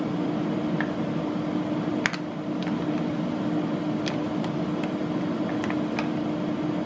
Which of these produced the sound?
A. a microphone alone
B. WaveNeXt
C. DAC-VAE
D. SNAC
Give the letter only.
A